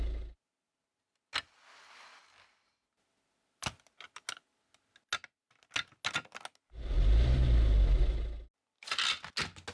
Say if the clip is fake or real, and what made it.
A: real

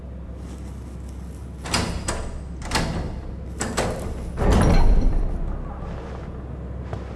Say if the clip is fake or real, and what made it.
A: real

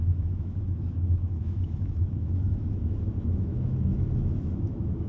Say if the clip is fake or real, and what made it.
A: fake, autoencoder, DAC-VAE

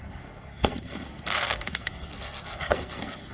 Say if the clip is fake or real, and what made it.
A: fake, codec, SNAC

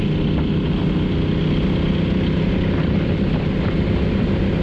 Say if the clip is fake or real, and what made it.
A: real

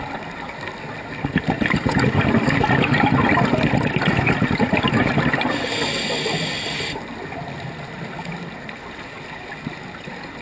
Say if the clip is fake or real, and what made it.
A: real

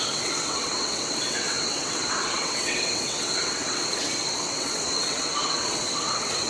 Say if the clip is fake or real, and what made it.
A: fake, vocoder, WaveNeXt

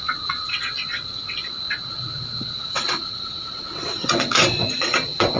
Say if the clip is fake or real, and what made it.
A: fake, vocoder, WaveNeXt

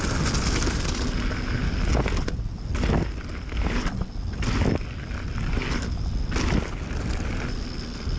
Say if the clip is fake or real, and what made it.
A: real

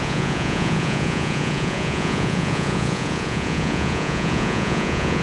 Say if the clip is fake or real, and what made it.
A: fake, vocoder, Vocos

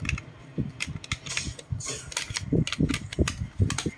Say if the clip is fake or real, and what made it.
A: real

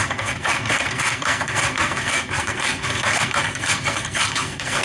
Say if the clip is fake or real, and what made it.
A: fake, codec, SNAC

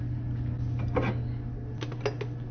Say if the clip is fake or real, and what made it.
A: real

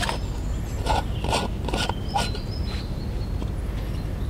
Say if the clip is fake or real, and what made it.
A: real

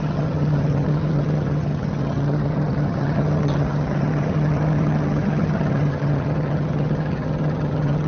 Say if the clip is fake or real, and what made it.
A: fake, vocoder, HiFi-GAN